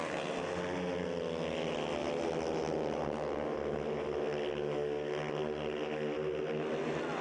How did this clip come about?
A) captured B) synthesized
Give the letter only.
A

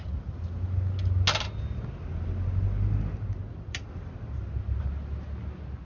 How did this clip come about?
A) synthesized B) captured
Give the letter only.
B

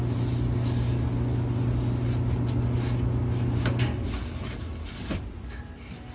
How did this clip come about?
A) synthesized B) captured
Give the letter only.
B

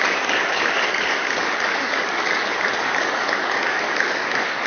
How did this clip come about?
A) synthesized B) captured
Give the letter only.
A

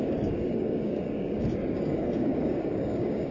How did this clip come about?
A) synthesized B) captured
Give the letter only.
A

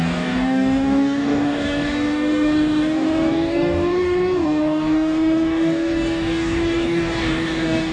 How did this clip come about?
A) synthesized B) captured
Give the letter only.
A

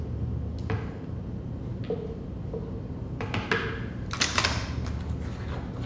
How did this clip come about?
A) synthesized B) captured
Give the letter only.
B